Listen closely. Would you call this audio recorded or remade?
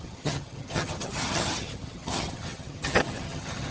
remade